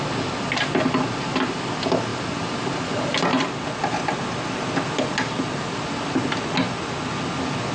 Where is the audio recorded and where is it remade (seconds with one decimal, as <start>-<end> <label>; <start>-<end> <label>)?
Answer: 0.0-7.7 recorded